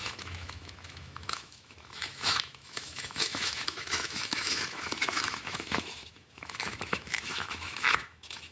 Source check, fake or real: fake